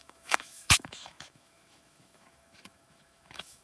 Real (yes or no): no